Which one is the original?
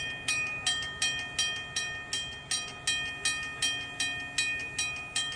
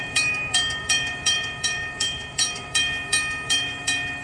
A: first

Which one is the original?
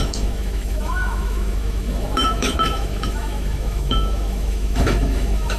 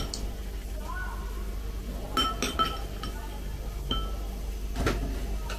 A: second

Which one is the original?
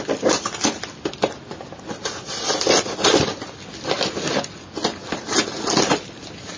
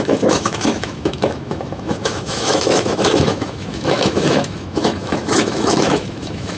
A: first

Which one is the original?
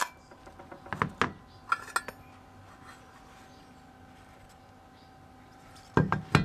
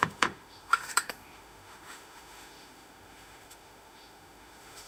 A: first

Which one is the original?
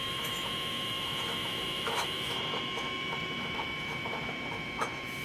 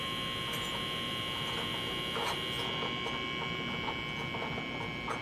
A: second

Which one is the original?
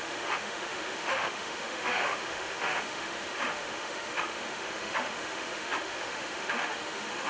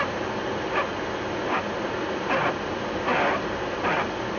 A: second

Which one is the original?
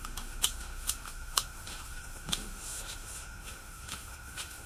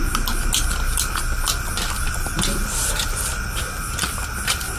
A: second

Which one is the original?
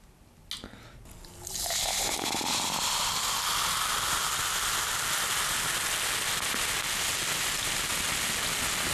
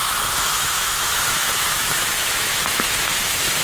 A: first